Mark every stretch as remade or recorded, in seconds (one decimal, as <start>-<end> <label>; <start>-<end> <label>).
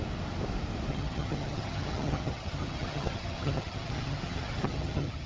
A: 0.0-0.9 recorded; 0.9-5.3 remade